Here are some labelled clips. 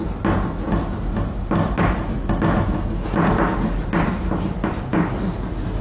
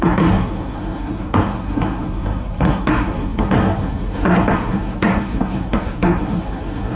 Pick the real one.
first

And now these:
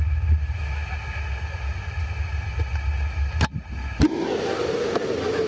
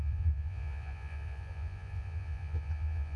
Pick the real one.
first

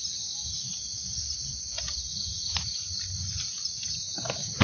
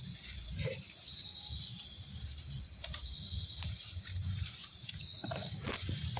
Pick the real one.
first